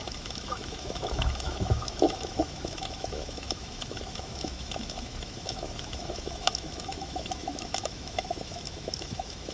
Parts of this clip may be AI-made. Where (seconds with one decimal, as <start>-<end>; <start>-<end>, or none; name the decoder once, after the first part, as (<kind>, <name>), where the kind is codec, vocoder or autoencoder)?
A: 0.0-9.5 (autoencoder, DAC-VAE)